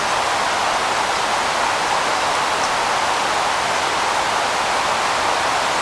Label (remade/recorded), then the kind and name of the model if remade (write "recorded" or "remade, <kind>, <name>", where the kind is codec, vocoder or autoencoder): recorded